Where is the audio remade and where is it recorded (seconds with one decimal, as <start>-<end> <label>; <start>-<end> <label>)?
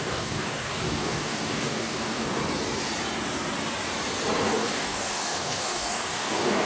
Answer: 0.0-2.4 remade; 2.4-4.4 recorded; 4.4-6.7 remade